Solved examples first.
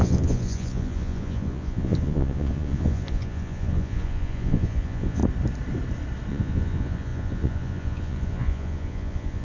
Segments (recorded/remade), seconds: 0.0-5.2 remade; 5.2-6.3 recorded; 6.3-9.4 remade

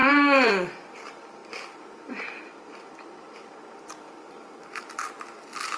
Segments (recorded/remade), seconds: 0.0-0.5 remade; 0.5-1.4 recorded; 1.4-4.8 remade; 4.8-5.8 recorded